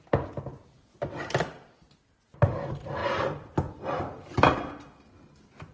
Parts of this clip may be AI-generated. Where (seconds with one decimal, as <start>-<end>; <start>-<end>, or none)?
0.5-1.2